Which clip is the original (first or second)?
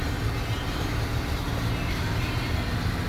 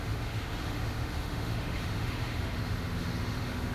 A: first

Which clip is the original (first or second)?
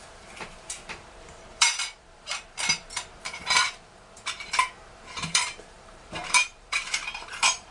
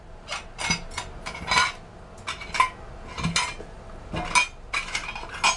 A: second